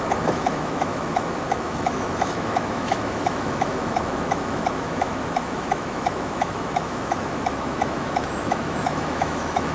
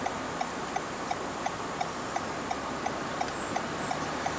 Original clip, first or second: second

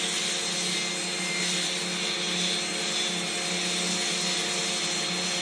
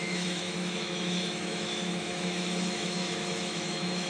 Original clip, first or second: first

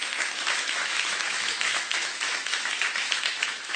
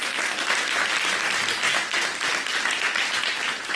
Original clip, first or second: second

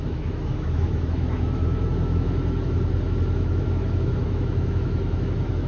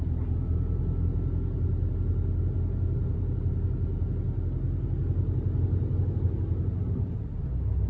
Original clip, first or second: second